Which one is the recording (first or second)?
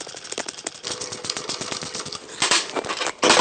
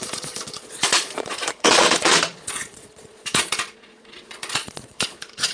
first